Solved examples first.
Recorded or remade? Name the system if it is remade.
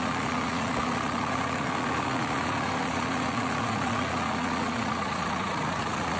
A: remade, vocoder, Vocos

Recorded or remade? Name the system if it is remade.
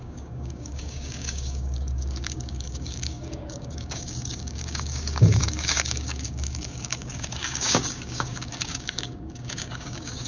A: remade, codec, DAC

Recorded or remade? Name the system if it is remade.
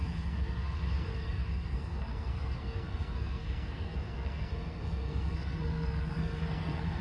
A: remade, codec, SNAC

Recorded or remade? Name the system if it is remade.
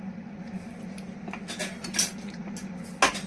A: recorded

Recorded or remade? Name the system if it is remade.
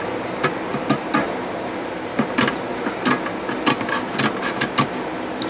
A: recorded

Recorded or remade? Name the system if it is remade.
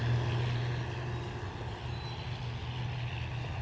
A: recorded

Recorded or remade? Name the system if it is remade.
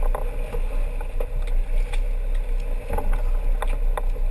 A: recorded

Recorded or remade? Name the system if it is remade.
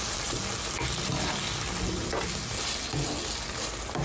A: recorded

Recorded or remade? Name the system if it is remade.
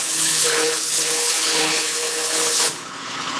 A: remade, codec, HILCodec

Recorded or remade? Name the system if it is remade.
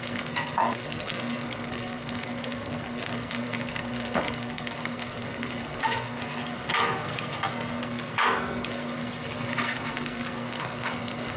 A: remade, codec, SNAC